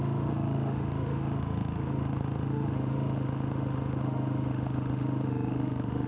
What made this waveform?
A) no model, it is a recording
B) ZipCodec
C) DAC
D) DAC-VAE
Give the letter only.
D